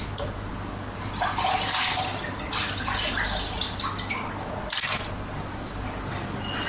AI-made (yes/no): no